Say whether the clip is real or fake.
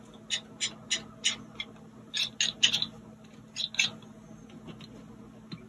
real